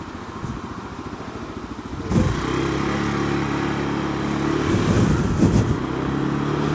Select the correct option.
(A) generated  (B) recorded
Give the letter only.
B